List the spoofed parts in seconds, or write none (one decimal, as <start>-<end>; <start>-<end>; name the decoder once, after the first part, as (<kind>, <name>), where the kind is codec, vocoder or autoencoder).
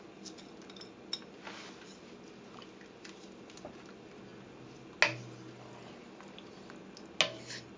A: none